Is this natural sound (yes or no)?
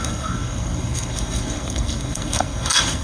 no